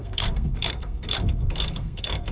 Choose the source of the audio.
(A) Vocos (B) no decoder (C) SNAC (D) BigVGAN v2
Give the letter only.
C